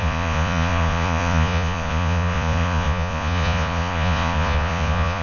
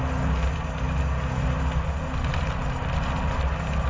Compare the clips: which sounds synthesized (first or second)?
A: first